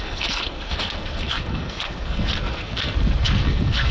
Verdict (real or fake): fake